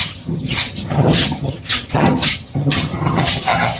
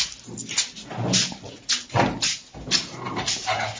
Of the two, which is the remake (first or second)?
first